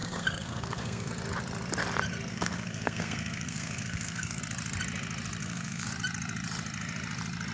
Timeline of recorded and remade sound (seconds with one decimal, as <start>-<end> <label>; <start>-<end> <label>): 0.0-1.1 remade; 1.1-2.3 recorded; 2.3-4.4 remade; 4.4-5.4 recorded; 5.4-5.9 remade; 5.9-7.5 recorded